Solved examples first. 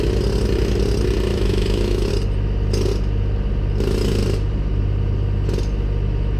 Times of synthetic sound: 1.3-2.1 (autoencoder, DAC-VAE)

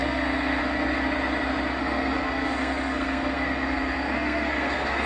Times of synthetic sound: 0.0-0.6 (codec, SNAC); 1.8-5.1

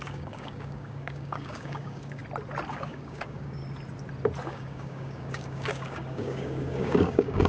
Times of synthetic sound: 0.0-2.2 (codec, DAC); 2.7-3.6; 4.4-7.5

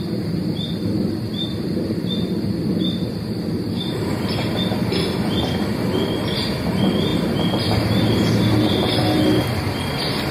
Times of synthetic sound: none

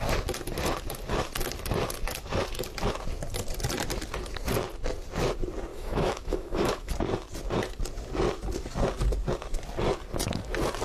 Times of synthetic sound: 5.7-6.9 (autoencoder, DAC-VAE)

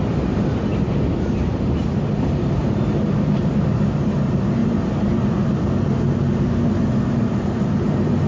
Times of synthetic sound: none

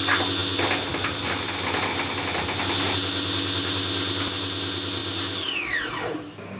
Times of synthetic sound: none